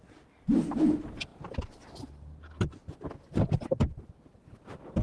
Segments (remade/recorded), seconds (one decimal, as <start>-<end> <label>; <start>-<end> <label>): 0.0-5.0 recorded